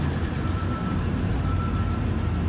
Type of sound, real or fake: fake